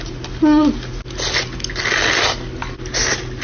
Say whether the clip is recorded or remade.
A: recorded